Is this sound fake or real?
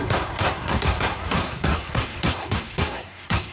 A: fake